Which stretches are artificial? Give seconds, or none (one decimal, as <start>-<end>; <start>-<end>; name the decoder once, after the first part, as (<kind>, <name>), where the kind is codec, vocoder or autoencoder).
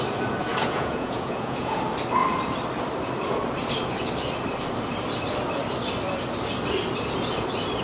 0.5-1.8 (vocoder, Vocos)